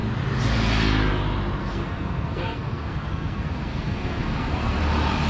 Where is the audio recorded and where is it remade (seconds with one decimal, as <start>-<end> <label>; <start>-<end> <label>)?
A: 0.0-1.6 recorded; 1.6-4.8 remade; 4.8-5.3 recorded